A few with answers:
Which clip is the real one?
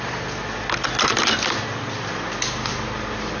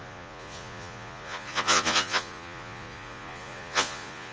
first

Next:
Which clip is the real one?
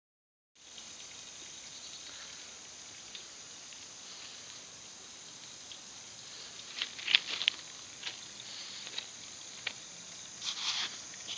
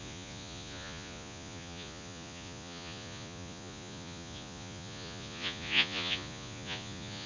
first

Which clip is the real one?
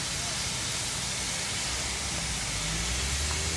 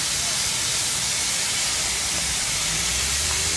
first